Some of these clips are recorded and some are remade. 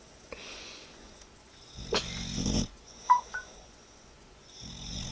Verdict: remade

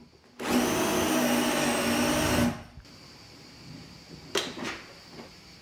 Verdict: recorded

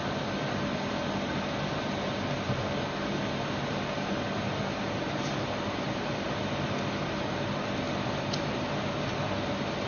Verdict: recorded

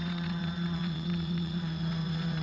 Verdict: remade